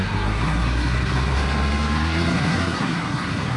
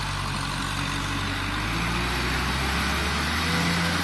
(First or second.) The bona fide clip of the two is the second